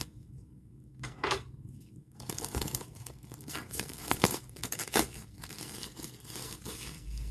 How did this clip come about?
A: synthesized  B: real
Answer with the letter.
A